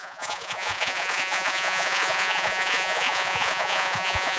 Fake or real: fake